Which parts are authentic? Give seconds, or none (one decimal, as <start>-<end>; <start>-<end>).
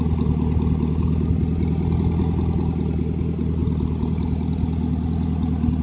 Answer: 0.0-5.8